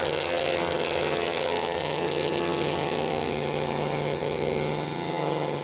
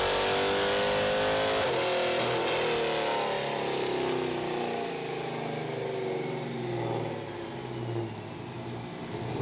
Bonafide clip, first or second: second